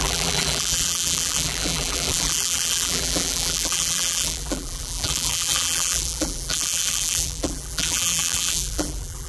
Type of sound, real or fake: fake